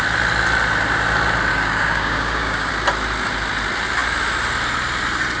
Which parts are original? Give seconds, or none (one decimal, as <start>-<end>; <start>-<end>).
0.0-1.5; 2.7-5.4